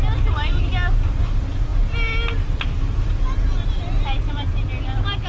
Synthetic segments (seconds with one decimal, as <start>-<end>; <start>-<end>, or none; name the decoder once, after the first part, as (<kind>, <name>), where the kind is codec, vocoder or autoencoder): none